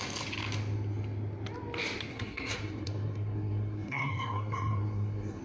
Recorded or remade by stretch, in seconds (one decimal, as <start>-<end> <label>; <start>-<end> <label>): 0.0-2.1 recorded; 2.1-5.4 remade